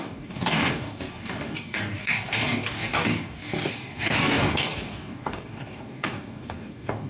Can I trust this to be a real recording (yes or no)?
no